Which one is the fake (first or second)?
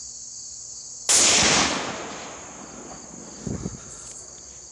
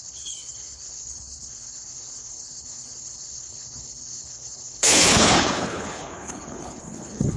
second